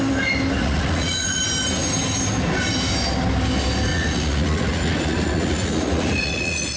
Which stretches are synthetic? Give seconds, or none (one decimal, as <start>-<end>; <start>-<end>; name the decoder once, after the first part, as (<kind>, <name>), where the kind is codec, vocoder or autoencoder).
0.6-1.4 (vocoder, Vocos); 3.9-6.8